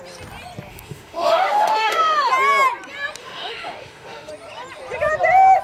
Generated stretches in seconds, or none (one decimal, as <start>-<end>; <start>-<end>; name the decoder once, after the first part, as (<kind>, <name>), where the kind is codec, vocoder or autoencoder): 0.7-2.3 (autoencoder, DAC-VAE); 3.2-4.3